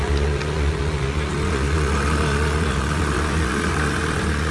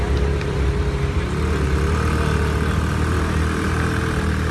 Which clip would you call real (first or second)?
second